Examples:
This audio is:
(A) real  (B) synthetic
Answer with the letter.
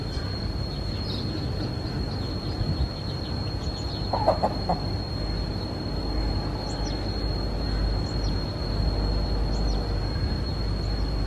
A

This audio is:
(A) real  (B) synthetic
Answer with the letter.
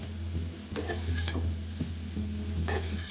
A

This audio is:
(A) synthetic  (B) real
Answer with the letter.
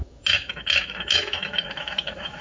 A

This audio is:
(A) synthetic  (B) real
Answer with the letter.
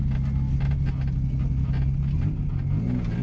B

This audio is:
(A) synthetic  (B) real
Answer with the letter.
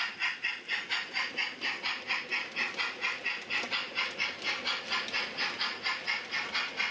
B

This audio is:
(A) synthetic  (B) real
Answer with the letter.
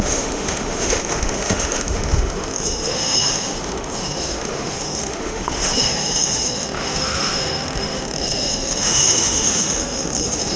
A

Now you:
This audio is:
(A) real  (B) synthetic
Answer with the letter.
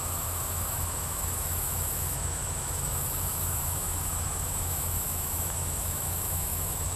B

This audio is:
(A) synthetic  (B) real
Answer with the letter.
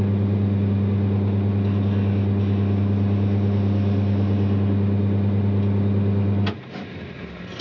B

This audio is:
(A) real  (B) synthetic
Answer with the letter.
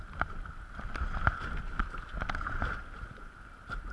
A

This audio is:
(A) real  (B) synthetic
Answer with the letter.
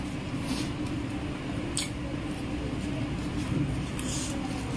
A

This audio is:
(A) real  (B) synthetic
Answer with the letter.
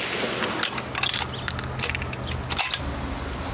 A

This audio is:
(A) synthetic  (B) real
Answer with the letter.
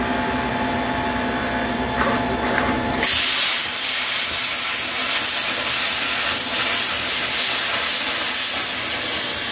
B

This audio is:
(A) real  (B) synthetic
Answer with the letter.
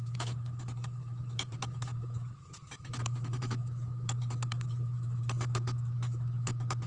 B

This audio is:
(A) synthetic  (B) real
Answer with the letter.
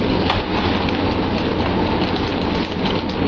B